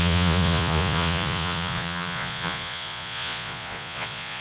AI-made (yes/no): yes